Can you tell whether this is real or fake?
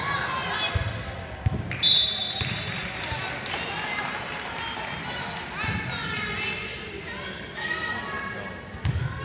real